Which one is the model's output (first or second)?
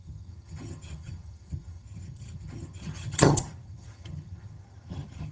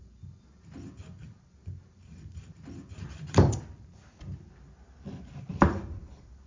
first